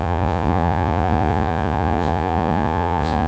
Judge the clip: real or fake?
fake